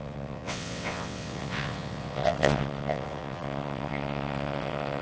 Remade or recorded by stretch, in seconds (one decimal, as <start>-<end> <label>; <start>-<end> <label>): 0.0-5.0 remade